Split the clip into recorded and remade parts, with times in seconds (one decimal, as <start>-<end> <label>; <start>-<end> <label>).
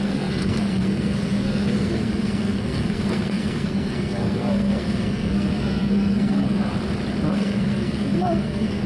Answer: 0.0-6.7 remade; 6.7-7.3 recorded; 7.3-8.9 remade